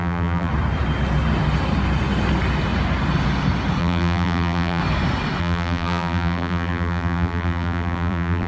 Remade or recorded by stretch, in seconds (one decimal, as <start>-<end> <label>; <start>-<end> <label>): 0.0-0.5 remade; 0.5-3.8 recorded; 3.8-4.8 remade; 4.8-5.4 recorded; 5.4-8.5 remade